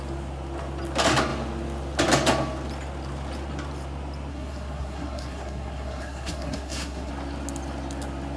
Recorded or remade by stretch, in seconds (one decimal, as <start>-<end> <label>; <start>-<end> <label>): 0.0-4.3 recorded; 4.3-7.1 remade; 7.1-8.4 recorded